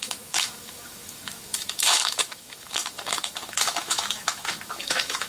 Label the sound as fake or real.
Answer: fake